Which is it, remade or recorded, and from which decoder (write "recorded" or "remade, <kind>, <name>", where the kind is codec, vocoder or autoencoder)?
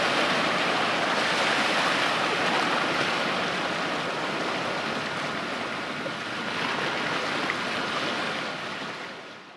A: recorded